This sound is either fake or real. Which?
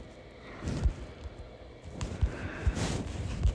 fake